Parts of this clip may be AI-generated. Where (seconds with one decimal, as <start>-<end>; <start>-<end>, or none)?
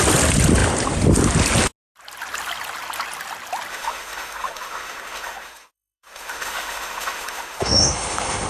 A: 3.7-8.5